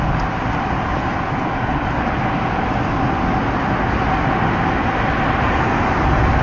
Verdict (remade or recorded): recorded